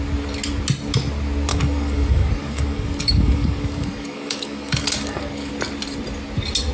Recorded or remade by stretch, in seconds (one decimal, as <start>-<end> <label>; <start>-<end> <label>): 0.0-1.5 recorded; 1.5-5.5 remade; 5.5-6.7 recorded